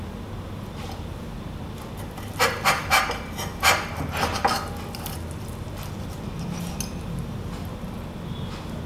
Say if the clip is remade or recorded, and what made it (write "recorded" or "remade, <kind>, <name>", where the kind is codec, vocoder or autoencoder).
recorded